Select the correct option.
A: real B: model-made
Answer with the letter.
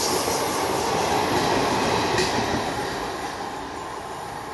A